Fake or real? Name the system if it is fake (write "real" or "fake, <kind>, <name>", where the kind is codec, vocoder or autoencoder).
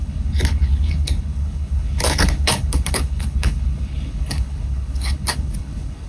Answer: fake, codec, HILCodec